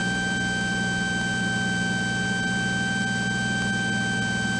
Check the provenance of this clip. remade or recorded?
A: recorded